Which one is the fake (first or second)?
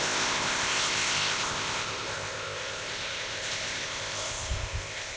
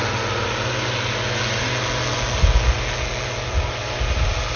first